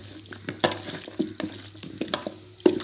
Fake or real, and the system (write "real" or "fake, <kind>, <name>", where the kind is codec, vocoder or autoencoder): real